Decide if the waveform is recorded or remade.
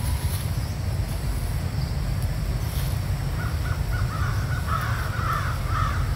recorded